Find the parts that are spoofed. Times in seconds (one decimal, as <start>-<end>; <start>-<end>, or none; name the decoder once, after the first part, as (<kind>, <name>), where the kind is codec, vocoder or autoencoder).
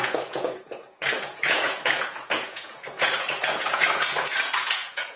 0.0-5.2 (vocoder, Vocos)